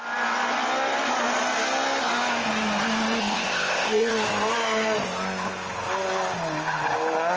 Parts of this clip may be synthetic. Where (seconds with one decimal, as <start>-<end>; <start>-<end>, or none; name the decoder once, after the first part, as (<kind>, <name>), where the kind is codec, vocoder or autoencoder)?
3.2-4.1 (codec, ZipCodec)